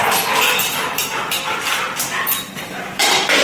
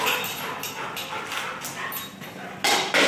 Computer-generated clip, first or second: first